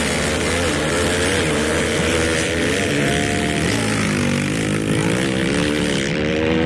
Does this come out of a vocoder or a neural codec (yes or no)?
no